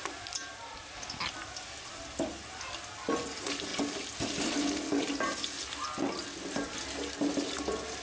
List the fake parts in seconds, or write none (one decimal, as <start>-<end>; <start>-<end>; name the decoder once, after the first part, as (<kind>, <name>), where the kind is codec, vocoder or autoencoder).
none